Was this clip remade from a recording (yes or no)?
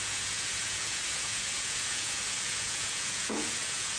yes